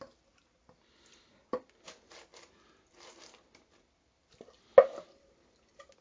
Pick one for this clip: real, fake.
real